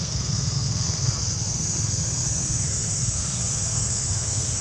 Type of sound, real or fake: fake